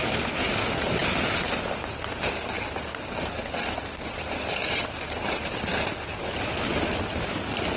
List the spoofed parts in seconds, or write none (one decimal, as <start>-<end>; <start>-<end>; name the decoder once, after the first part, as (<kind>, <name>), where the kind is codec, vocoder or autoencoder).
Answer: none